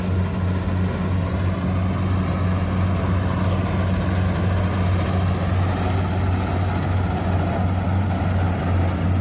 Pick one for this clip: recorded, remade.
recorded